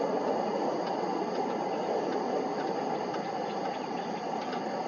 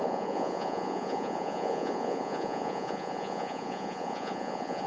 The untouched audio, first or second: first